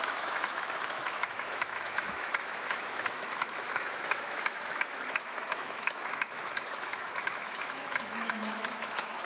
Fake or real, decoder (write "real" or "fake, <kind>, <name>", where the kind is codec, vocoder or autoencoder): fake, autoencoder, DAC-VAE